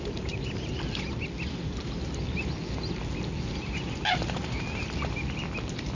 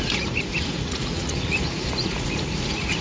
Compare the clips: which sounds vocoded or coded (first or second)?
second